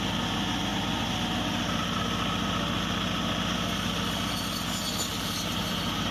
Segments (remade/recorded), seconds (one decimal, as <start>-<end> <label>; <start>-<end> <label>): 0.0-0.7 recorded; 0.7-2.0 remade; 2.0-5.1 recorded; 5.1-6.1 remade